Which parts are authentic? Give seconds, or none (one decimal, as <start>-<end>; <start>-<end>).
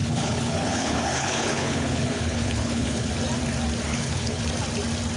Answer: 3.1-3.9; 4.4-5.2